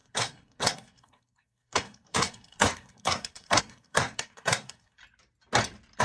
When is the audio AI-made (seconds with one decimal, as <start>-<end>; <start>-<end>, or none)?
0.0-5.0